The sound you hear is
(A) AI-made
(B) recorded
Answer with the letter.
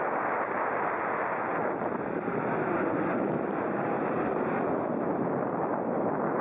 B